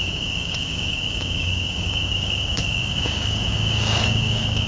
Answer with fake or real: fake